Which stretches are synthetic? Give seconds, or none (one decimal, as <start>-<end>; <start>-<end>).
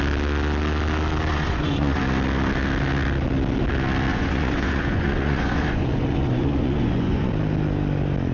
1.3-2.0; 4.1-7.3